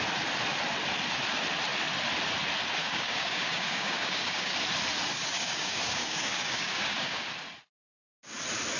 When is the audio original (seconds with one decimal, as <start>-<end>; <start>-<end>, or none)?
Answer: 0.0-2.8; 4.5-5.1; 7.2-8.8